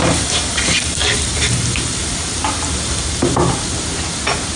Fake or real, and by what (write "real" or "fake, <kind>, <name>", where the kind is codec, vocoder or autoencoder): real